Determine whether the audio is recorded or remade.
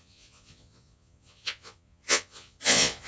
remade